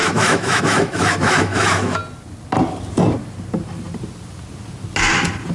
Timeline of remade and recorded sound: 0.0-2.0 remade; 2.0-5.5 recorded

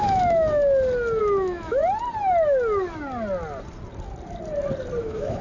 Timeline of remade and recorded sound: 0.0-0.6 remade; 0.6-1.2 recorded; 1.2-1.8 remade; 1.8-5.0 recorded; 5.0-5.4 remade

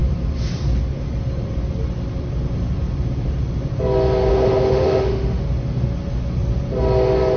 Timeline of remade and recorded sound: 0.0-4.3 recorded; 4.3-5.4 remade; 5.4-7.4 recorded

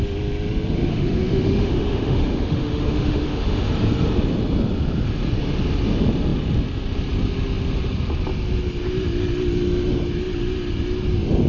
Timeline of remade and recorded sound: 0.0-0.9 recorded; 0.9-3.7 remade; 3.7-11.5 recorded

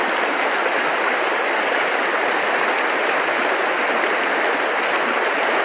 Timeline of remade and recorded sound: 0.0-5.6 recorded

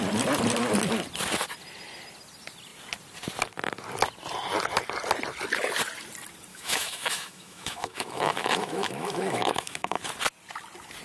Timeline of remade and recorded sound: 0.0-6.5 recorded; 6.5-10.0 remade; 10.0-11.0 recorded

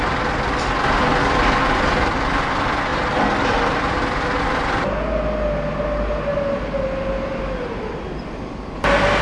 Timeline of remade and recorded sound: 0.0-9.2 recorded

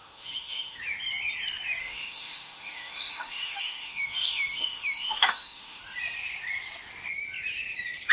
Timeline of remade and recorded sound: 0.0-0.8 remade; 0.8-1.8 recorded; 1.8-5.8 remade; 5.8-8.1 recorded